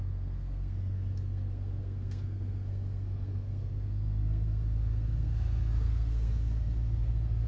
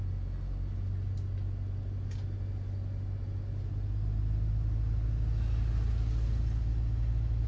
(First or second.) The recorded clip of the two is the second